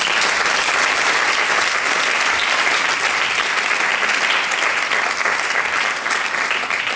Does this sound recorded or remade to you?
recorded